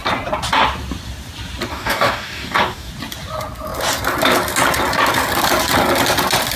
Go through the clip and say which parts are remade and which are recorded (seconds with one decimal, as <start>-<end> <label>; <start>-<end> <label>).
0.0-1.7 recorded; 1.7-2.9 remade; 2.9-6.6 recorded